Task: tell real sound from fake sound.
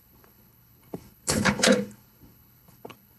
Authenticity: fake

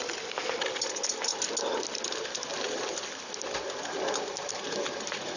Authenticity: real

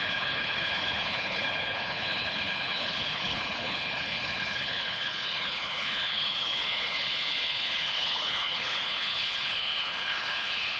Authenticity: fake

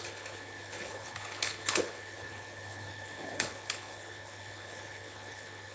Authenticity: fake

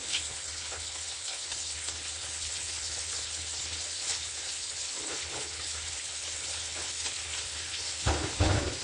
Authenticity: fake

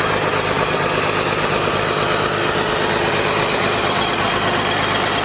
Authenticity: real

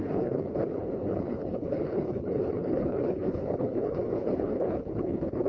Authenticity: fake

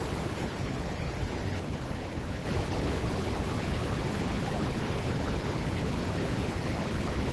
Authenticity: fake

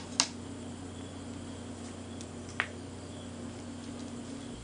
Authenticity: real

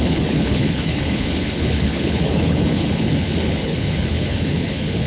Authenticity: fake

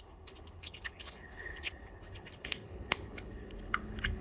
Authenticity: fake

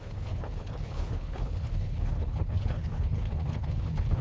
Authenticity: fake